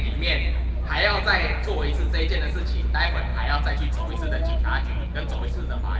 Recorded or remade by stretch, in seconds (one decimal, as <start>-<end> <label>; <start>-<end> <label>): 0.0-6.0 recorded